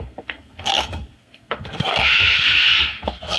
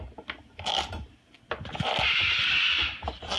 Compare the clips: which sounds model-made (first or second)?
first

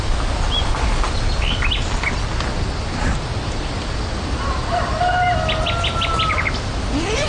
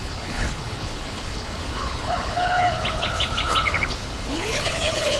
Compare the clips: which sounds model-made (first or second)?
second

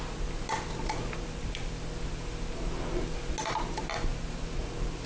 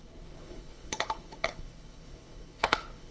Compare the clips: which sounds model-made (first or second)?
second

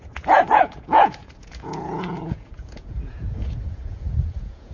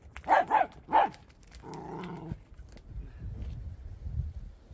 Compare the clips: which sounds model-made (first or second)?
first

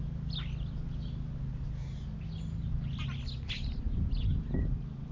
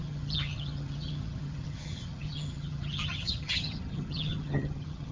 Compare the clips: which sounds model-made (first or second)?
second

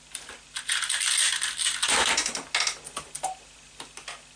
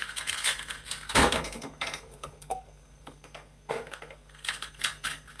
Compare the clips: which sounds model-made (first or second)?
second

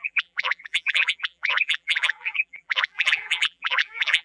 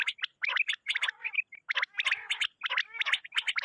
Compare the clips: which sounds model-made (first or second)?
first